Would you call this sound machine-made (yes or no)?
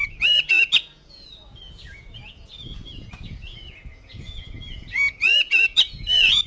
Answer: yes